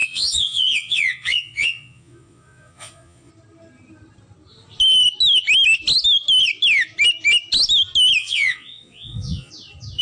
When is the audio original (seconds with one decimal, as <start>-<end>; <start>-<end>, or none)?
3.3-8.2; 9.5-10.0